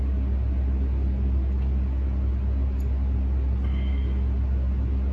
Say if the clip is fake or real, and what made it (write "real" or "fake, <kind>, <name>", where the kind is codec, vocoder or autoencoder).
real